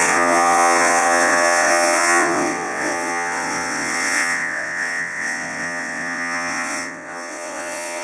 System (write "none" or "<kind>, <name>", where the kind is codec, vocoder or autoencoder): vocoder, WaveNeXt